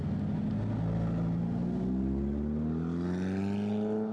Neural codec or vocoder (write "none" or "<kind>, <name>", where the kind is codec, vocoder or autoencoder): none